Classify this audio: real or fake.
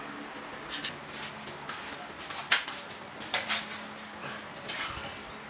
real